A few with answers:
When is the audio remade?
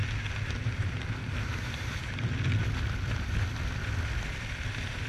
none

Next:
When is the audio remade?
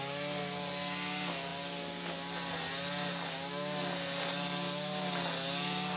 none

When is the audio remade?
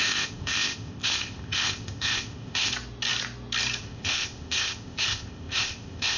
0.0-2.7; 3.8-6.2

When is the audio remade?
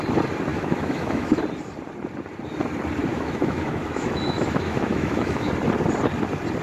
0.5-1.4; 3.1-5.5